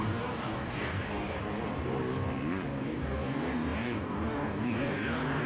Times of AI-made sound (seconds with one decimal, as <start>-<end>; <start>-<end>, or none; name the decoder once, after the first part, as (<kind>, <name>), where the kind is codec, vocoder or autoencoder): 0.0-1.4 (codec, DAC); 2.8-5.5